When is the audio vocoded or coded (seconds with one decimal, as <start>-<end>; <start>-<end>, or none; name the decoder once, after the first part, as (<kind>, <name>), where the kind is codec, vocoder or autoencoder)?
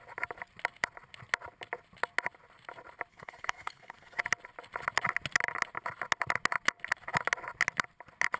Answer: 3.1-4.2 (codec, SNAC)